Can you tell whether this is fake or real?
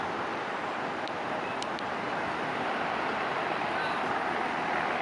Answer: real